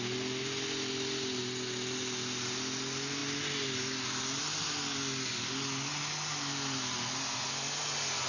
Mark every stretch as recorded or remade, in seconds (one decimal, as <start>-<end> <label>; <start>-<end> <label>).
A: 0.0-8.3 recorded